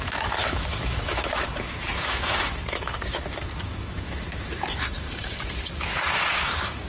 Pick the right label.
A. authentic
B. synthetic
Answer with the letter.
B